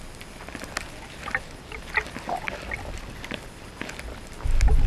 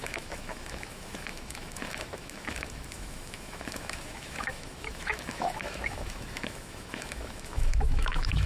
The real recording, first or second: first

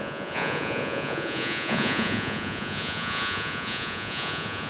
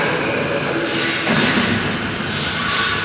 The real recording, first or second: second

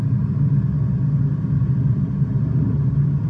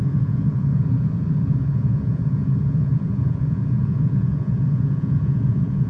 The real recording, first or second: first